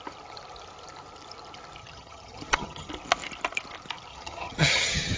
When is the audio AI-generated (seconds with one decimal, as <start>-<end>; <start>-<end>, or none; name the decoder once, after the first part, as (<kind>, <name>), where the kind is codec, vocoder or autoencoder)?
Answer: 1.8-2.9 (vocoder, HiFi-GAN); 4.1-5.2